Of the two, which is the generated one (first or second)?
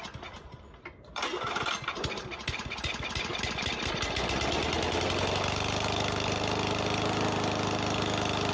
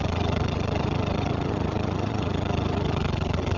second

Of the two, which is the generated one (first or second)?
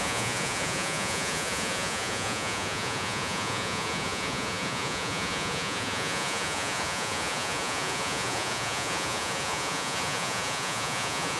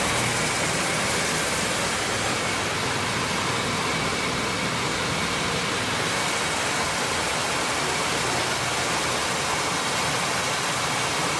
first